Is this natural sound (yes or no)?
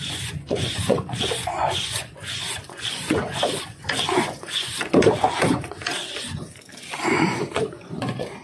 no